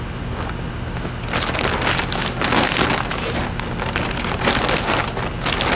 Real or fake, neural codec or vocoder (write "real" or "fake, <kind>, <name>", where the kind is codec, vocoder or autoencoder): real